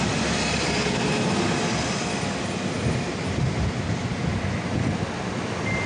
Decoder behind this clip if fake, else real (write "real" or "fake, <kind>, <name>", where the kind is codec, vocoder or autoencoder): real